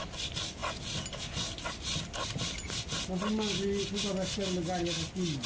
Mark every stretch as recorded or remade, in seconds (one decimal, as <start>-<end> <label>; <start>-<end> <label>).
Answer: 0.0-5.5 recorded